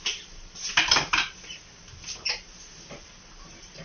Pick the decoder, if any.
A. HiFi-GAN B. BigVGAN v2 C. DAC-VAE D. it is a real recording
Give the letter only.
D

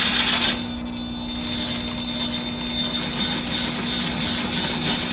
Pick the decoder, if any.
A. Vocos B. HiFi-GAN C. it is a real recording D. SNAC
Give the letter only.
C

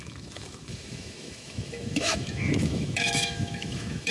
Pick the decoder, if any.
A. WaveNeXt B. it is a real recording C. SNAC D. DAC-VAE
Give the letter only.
D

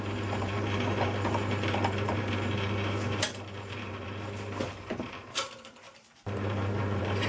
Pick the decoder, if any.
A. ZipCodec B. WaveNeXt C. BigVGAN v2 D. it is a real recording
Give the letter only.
C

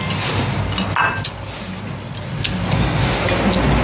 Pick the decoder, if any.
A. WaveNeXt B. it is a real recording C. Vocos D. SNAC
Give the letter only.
B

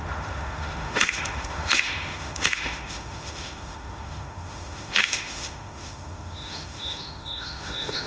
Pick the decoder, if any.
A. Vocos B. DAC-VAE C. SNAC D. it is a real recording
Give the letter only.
B